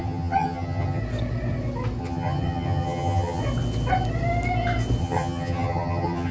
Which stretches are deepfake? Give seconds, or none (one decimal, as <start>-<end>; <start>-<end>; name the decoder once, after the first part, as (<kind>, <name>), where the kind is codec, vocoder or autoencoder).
0.0-1.0 (vocoder, HiFi-GAN); 2.0-3.4; 5.0-6.3